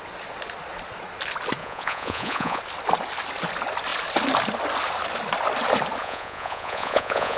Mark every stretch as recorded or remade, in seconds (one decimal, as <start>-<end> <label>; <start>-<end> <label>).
0.0-1.6 recorded; 1.6-2.6 remade; 2.6-6.0 recorded; 6.0-7.4 remade